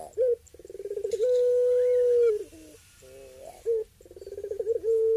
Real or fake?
real